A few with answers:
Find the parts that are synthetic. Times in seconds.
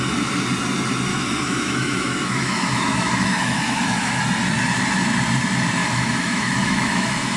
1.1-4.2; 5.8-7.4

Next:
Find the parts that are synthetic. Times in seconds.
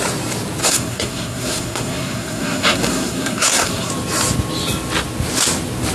0.6-3.9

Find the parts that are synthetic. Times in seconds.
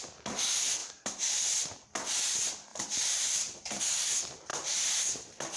0.8-1.4; 2.7-3.8; 4.5-5.1